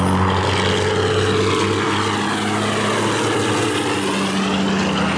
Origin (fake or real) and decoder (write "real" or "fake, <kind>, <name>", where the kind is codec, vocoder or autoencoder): real